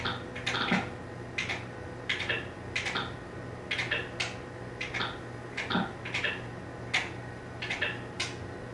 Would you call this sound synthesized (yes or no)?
no